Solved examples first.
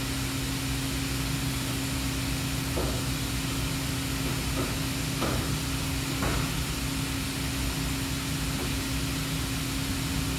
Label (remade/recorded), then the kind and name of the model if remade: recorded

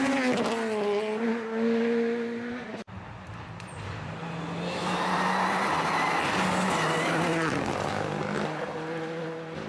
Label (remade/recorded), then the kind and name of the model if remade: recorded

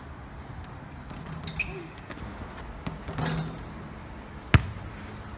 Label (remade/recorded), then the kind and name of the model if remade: recorded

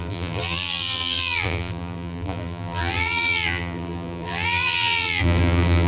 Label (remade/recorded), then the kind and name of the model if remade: remade, vocoder, BigVGAN v2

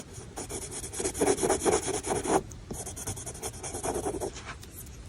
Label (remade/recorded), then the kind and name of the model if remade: recorded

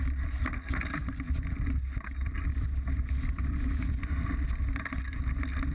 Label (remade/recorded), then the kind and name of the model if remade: recorded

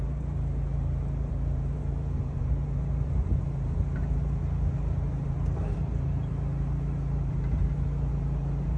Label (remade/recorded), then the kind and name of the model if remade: remade, vocoder, BigVGAN v2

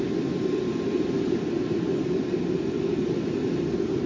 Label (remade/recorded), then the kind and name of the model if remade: recorded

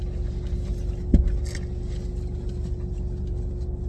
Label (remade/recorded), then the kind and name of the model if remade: recorded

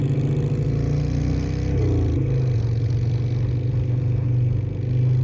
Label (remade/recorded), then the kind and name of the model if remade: recorded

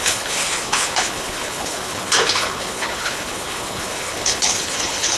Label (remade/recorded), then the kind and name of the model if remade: remade, codec, HILCodec